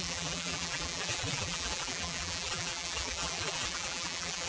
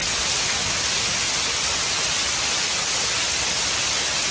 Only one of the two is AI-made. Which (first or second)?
first